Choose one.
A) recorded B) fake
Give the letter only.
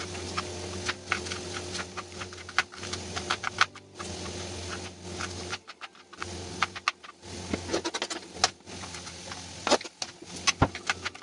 A